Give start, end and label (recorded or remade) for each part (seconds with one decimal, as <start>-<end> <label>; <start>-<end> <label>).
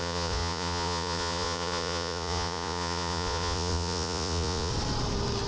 0.0-4.7 remade; 4.7-5.5 recorded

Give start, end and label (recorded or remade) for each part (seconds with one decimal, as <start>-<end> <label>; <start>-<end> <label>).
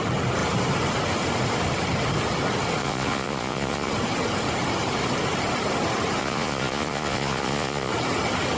0.0-2.8 recorded; 2.8-3.9 remade; 3.9-6.2 recorded; 6.2-7.9 remade; 7.9-8.6 recorded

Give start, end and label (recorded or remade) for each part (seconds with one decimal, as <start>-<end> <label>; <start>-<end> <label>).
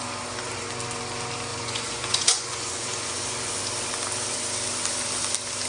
0.0-1.5 recorded; 1.5-3.5 remade; 3.5-5.7 recorded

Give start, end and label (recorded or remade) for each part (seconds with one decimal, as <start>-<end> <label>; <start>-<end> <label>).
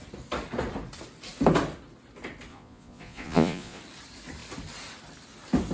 0.0-2.5 recorded; 2.5-3.8 remade; 3.8-5.7 recorded